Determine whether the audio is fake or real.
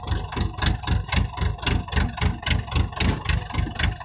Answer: real